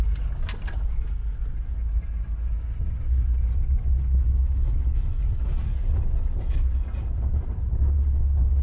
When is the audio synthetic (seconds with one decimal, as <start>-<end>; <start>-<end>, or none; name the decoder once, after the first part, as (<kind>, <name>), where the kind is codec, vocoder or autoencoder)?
none